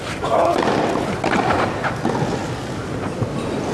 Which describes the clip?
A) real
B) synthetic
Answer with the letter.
A